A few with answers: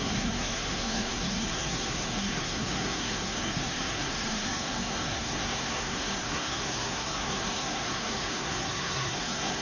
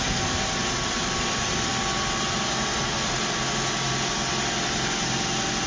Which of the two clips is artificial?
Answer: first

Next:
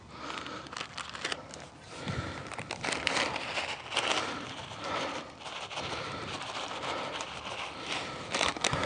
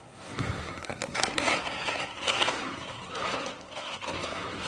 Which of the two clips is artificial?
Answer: second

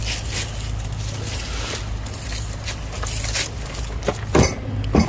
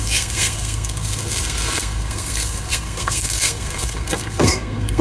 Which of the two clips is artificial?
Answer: second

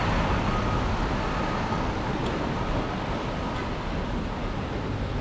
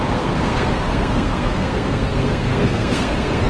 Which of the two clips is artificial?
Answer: second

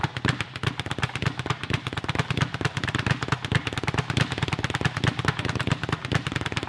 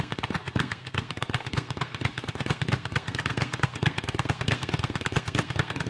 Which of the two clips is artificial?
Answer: second